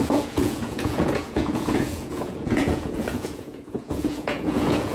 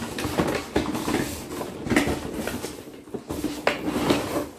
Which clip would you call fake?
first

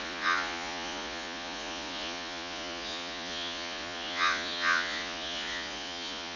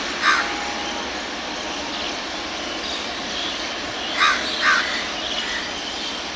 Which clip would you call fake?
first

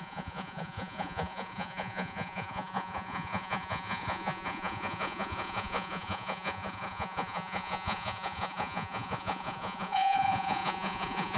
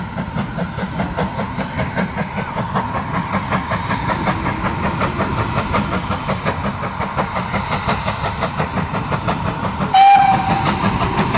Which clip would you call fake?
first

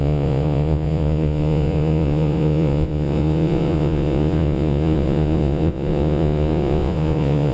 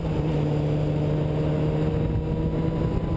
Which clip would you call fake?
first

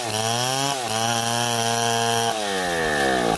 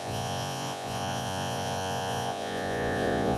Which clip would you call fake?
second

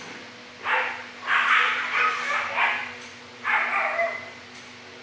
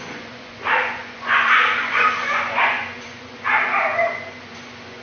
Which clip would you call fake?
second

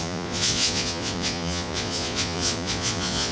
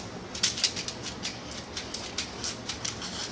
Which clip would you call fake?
first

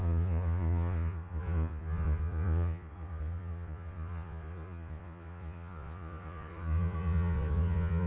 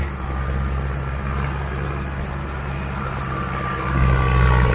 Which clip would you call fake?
first